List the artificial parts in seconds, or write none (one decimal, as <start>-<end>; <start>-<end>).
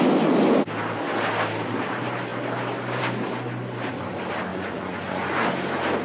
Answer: 4.5-5.5